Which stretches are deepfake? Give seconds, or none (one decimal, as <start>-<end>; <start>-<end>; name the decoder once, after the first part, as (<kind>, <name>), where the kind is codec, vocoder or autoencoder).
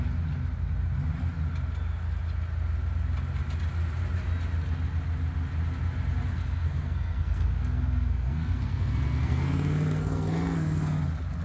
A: 6.3-11.0 (codec, SNAC)